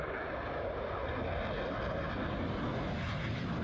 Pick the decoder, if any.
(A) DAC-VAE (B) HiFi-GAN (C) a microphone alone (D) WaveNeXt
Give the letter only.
C